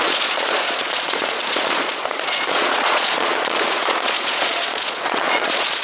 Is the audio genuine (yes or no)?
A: no